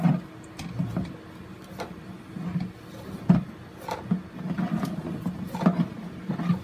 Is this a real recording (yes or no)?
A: yes